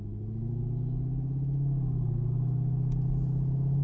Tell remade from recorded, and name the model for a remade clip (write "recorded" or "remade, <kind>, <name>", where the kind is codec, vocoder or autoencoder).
recorded